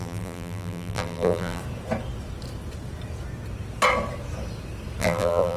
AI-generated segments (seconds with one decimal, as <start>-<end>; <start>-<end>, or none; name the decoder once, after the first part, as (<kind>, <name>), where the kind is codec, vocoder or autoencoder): 0.0-1.6 (vocoder, BigVGAN v2); 5.0-5.6